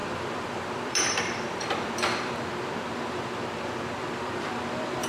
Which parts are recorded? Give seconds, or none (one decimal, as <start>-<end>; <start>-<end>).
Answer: none